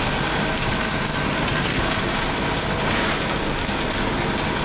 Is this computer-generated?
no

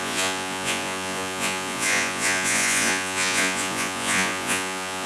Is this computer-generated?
yes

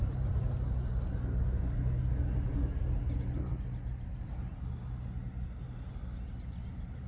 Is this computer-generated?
no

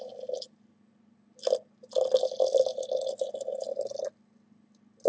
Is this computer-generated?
no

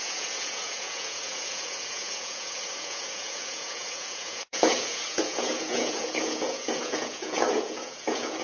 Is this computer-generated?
yes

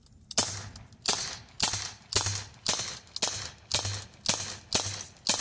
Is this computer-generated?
no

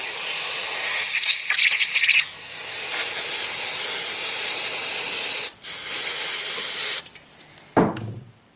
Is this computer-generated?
no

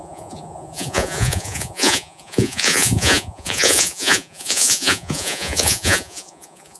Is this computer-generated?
yes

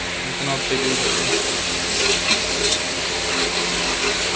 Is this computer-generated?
no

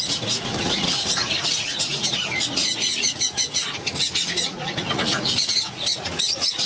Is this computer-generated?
yes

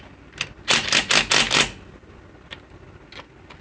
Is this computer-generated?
no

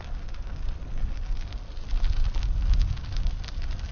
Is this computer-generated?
no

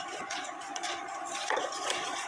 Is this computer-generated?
yes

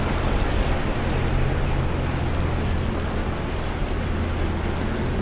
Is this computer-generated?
no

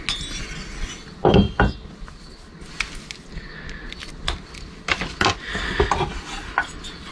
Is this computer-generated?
no